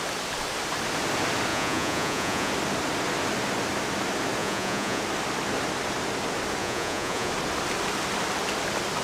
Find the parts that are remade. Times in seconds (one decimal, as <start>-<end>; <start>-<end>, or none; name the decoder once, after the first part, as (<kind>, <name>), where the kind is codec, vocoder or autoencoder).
1.5-2.5 (vocoder, Vocos); 4.4-5.0; 6.6-7.3